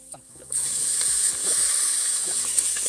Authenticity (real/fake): fake